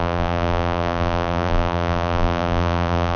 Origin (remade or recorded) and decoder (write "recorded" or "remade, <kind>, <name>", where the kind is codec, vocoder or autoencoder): remade, vocoder, BigVGAN v2